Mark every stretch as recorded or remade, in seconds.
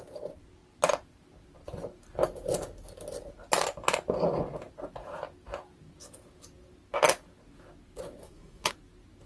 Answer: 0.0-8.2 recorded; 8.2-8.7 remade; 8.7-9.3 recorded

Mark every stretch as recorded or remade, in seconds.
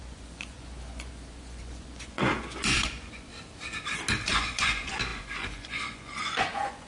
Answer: 0.0-3.3 remade; 3.3-4.3 recorded; 4.3-6.9 remade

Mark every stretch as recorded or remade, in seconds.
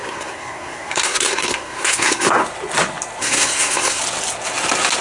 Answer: 0.0-2.4 remade; 2.4-3.2 recorded; 3.2-4.0 remade; 4.0-5.0 recorded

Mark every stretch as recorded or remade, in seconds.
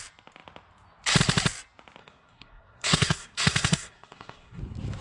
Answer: 0.0-2.0 recorded; 2.0-4.6 remade; 4.6-5.0 recorded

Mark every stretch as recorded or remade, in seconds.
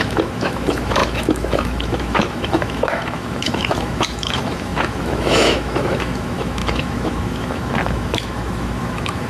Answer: 0.0-9.3 remade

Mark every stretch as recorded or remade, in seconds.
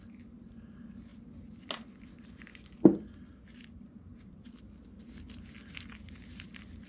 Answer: 0.0-6.9 recorded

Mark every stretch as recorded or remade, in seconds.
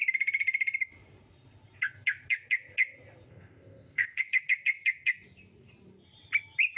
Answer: 0.0-3.3 recorded; 3.3-4.2 remade; 4.2-6.8 recorded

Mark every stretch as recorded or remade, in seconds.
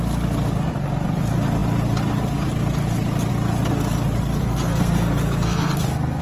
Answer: 0.0-4.4 recorded; 4.4-6.2 remade